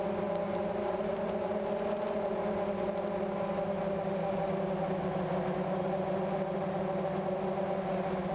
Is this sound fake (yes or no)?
no